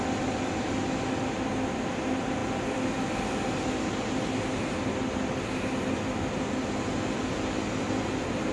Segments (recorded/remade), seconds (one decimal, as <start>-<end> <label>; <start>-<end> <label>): 0.0-8.5 recorded

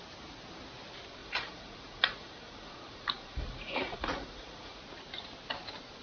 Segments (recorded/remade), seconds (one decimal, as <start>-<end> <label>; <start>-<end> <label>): 0.0-1.2 recorded; 1.2-4.8 remade; 4.8-6.0 recorded

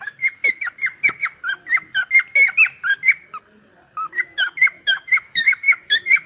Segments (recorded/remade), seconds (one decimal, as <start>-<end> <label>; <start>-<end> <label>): 0.0-0.4 remade; 0.4-4.2 recorded; 4.2-6.3 remade